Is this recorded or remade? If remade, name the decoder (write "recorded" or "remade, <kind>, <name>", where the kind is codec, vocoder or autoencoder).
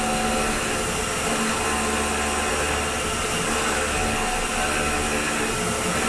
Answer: recorded